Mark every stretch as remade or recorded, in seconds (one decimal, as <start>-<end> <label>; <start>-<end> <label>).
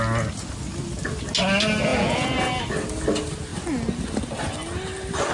0.0-1.9 recorded; 1.9-2.6 remade; 2.6-5.3 recorded